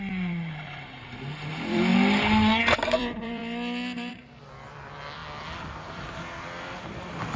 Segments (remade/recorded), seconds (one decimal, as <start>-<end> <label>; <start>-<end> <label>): 0.0-1.9 remade; 1.9-2.6 recorded; 2.6-3.4 remade; 3.4-4.1 recorded; 4.1-5.2 remade; 5.2-5.9 recorded; 5.9-7.4 remade